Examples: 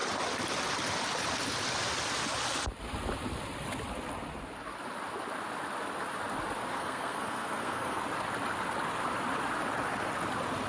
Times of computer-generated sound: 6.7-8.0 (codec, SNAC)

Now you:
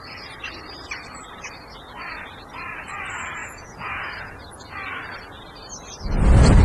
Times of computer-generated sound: 3.4-4.4 (vocoder, Vocos)

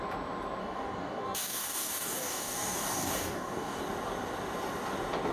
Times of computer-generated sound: 0.6-3.8 (codec, DAC)

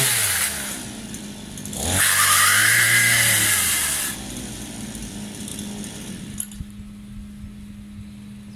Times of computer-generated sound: none

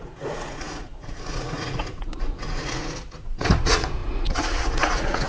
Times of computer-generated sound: 0.0-5.3 (vocoder, Vocos)

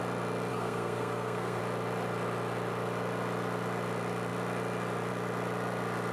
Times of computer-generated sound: 0.5-1.6 (codec, SNAC)

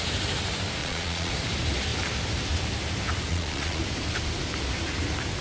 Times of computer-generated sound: 0.8-1.3 (vocoder, Vocos); 3.3-3.8